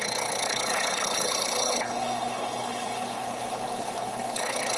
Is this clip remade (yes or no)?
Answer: yes